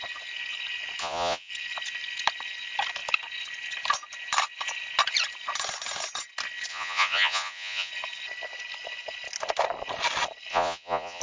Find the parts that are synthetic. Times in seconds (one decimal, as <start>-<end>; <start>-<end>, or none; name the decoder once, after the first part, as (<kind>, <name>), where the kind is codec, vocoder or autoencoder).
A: 1.0-1.5 (vocoder, Vocos); 6.7-7.9; 10.5-11.2